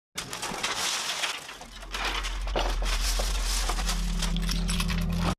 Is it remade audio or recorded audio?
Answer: recorded